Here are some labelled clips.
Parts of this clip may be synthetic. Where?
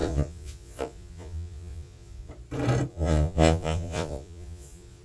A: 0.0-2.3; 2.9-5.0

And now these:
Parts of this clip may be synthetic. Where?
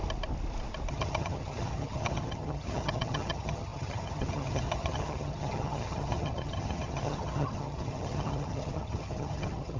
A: 0.9-9.8